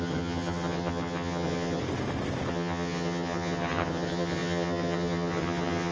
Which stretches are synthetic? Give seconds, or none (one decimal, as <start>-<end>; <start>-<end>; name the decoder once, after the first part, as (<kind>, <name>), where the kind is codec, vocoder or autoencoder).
0.0-1.8 (vocoder, HiFi-GAN); 2.5-5.9